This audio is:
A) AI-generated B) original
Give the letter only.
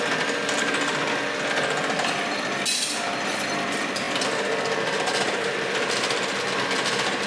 B